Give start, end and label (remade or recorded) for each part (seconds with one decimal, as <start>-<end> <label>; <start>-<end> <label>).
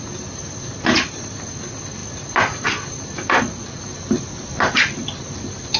0.0-5.8 recorded